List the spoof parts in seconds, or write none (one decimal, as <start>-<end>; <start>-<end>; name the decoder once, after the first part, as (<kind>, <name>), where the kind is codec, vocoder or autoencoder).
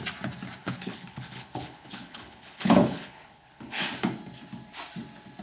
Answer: 0.6-3.8 (codec, HILCodec)